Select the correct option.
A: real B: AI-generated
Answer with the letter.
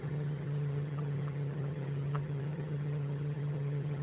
B